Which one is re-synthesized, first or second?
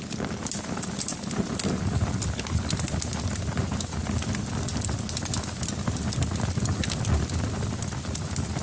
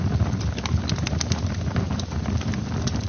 second